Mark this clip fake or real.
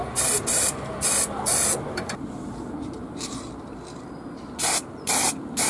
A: fake